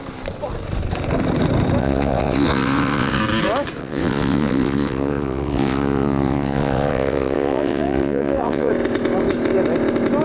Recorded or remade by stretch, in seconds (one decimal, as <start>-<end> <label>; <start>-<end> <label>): 0.0-1.8 recorded; 1.8-3.2 remade; 3.2-3.8 recorded; 3.8-8.7 remade; 8.7-10.2 recorded